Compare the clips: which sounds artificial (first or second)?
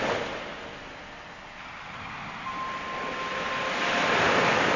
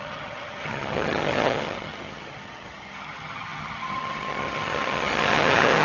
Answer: second